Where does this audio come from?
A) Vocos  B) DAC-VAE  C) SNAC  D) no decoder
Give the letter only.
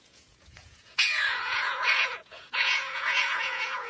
A